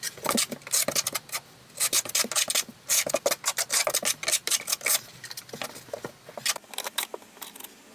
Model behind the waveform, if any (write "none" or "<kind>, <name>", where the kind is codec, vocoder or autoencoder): none